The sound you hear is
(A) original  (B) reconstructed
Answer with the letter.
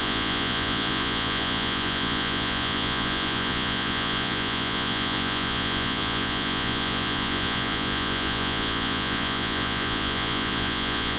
B